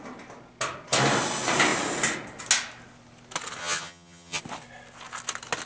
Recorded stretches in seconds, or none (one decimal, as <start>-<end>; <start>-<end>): 0.0-3.6; 4.4-5.7